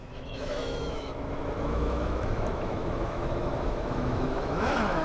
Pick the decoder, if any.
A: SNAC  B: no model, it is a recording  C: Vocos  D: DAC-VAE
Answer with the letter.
D